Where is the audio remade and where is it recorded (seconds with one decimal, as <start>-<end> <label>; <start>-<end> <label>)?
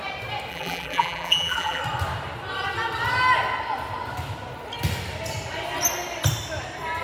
0.0-0.5 recorded; 0.5-1.8 remade; 1.8-7.0 recorded